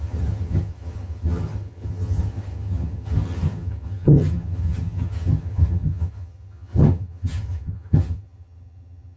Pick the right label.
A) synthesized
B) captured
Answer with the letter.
A